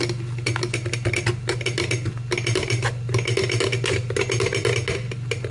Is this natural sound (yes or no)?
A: yes